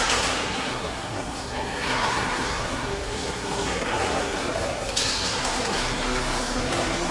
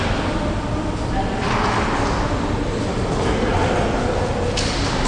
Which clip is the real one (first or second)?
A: second